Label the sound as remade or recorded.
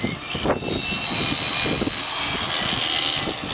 recorded